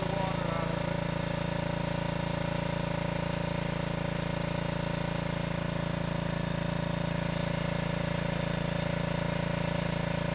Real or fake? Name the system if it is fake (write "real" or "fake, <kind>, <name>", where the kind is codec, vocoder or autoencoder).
real